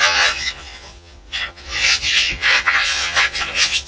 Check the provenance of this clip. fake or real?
fake